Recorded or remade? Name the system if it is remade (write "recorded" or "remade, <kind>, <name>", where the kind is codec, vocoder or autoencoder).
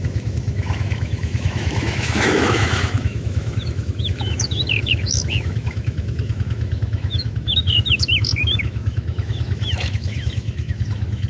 remade, autoencoder, DAC-VAE